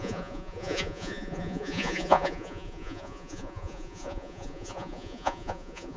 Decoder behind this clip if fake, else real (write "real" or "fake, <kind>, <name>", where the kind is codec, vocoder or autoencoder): fake, vocoder, Vocos